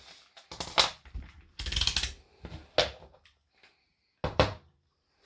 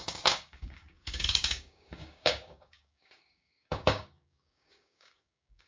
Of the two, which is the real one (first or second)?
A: first